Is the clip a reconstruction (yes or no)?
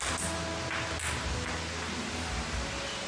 no